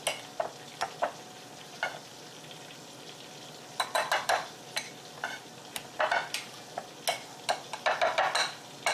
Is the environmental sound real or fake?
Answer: real